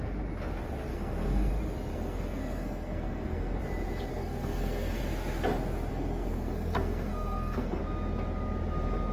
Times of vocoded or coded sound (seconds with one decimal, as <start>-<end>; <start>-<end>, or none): 0.9-1.5; 1.9-3.6; 4.1-5.0; 5.9-7.8